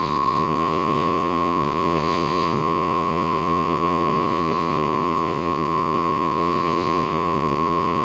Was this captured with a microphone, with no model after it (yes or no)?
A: no